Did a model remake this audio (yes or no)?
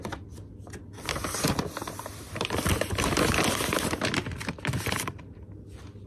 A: yes